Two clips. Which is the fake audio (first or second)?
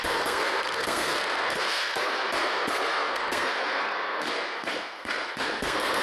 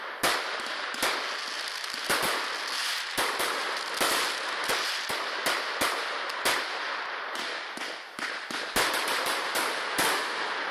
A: first